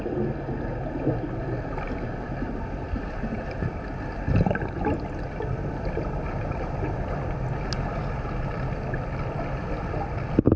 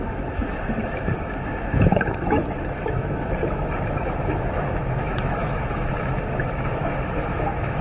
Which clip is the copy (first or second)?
second